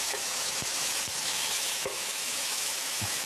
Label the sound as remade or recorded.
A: remade